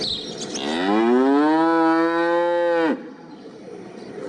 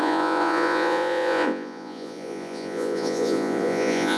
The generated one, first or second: second